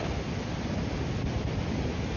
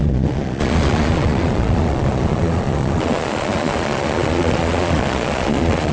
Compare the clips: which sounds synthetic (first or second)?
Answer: second